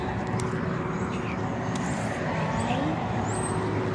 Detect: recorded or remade recorded